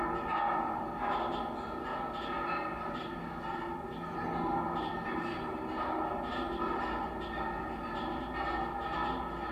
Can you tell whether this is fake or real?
real